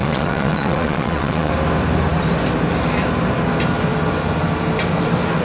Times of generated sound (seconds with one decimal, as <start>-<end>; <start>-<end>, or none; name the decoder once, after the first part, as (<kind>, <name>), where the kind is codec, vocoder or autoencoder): 0.0-1.5 (vocoder, WaveNeXt)